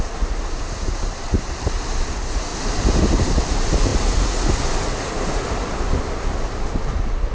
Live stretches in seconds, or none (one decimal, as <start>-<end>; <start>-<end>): 0.0-7.3